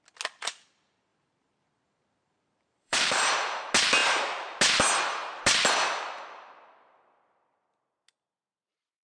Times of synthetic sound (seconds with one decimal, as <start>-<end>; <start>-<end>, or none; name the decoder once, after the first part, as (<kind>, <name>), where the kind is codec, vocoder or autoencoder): 1.1-3.6 (vocoder, BigVGAN v2)